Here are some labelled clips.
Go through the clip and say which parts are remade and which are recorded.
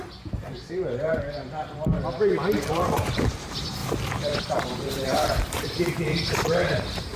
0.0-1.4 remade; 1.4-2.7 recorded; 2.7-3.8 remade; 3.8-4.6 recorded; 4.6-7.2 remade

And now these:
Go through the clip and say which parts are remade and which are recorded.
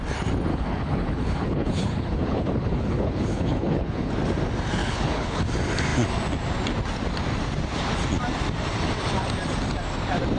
0.0-0.5 recorded; 0.5-4.1 remade; 4.1-4.8 recorded; 4.8-5.4 remade; 5.4-10.4 recorded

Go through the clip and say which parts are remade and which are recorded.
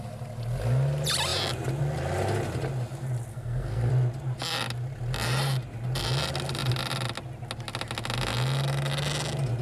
0.0-3.3 recorded; 3.3-3.9 remade; 3.9-9.6 recorded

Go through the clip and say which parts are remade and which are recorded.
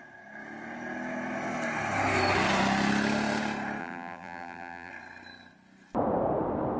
0.0-3.8 recorded; 3.8-4.9 remade; 4.9-6.8 recorded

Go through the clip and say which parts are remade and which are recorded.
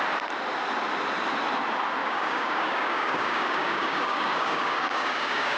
0.0-2.0 recorded; 2.0-5.6 remade